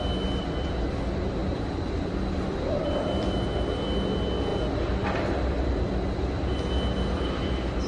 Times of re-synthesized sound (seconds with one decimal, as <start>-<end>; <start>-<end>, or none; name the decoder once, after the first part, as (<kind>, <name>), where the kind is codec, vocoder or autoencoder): 1.4-3.7 (vocoder, BigVGAN v2)